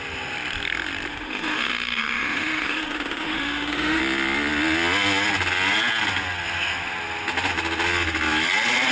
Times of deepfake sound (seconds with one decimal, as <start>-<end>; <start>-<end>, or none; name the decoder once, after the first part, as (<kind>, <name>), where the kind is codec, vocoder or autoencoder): 1.1-4.0 (autoencoder, DAC-VAE)

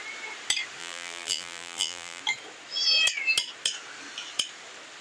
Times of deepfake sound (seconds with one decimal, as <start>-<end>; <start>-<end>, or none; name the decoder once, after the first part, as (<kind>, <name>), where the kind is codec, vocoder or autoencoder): 0.8-2.2 (vocoder, BigVGAN v2)

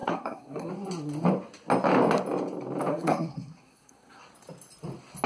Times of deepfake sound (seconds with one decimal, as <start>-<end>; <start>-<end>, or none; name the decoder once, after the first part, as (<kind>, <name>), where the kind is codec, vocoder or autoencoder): 0.0-0.7 (codec, SNAC); 2.9-4.2